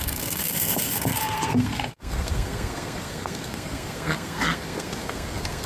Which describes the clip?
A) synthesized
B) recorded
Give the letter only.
A